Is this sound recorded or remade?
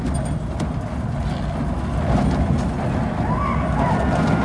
recorded